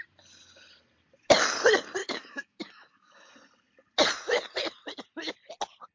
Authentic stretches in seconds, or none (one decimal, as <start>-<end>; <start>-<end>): 0.0-2.0; 3.3-5.9